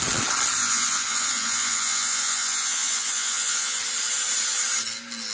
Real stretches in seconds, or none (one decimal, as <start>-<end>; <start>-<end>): 0.0-0.6; 3.8-5.3